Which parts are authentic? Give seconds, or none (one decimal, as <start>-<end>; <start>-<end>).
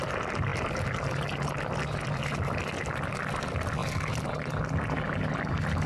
0.0-5.9